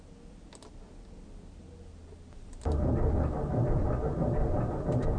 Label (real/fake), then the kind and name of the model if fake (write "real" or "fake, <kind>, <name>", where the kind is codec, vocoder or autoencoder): real